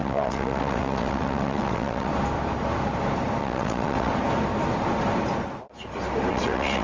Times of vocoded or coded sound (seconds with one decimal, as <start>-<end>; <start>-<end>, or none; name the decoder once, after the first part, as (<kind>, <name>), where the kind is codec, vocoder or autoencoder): 0.0-2.1 (vocoder, WaveNeXt); 3.4-4.1; 6.3-6.8